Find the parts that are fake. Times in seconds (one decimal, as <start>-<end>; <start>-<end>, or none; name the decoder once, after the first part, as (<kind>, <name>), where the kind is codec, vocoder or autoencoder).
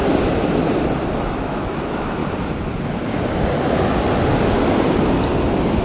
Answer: 1.2-2.2 (autoencoder, DAC-VAE)